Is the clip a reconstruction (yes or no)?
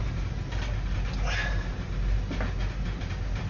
no